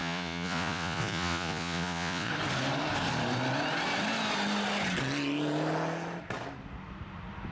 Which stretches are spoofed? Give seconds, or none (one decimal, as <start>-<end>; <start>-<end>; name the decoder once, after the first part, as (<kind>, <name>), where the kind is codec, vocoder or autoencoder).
0.0-2.3 (vocoder, Vocos)